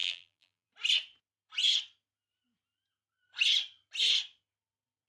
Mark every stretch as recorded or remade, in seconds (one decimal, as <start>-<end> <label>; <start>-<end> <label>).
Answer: 0.0-0.7 remade; 0.7-5.1 recorded